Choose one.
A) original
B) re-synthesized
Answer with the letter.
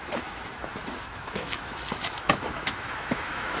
B